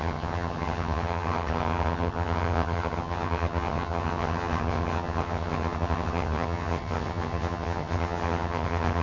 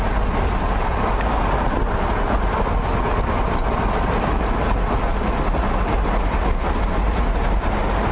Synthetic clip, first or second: first